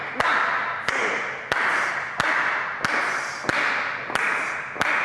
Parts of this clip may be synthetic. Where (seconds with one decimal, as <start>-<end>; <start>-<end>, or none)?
none